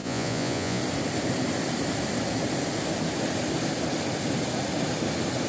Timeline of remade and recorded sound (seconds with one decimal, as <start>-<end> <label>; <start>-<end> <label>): 0.0-0.8 remade; 0.8-5.5 recorded